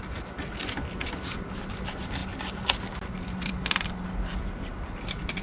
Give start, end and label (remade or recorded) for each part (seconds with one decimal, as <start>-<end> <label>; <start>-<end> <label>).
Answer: 0.0-5.4 recorded